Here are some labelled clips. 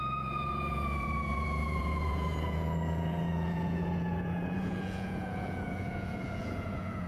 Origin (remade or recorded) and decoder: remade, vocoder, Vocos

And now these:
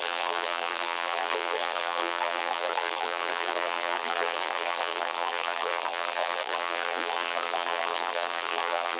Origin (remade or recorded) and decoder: remade, vocoder, BigVGAN v2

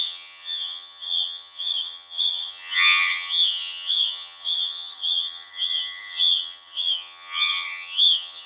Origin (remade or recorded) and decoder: remade, vocoder, HiFi-GAN